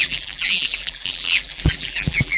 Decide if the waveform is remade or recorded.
remade